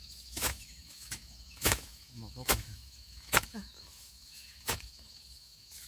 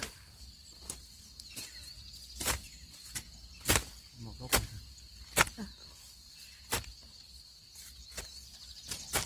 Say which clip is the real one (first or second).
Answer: second